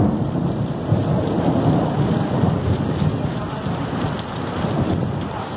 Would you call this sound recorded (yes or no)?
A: no